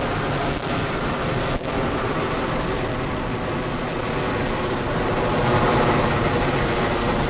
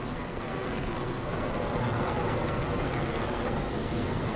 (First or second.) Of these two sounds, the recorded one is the first